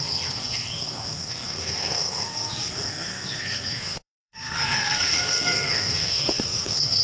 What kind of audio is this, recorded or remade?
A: remade